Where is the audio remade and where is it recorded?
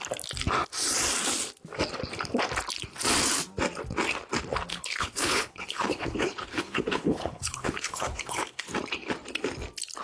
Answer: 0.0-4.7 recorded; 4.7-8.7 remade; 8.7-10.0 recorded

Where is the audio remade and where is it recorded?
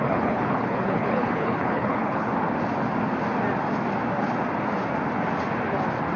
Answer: 0.0-2.3 remade; 2.3-6.2 recorded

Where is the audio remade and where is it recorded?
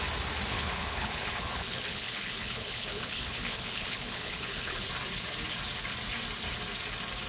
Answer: 0.0-0.5 recorded; 0.5-4.9 remade; 4.9-7.3 recorded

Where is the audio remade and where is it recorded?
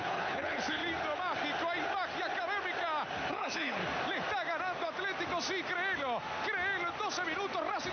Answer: 0.0-0.8 remade; 0.8-3.3 recorded; 3.3-3.8 remade; 3.8-7.9 recorded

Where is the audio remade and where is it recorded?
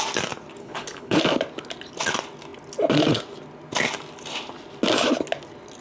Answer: 0.0-0.6 recorded; 0.6-1.2 remade; 1.2-5.8 recorded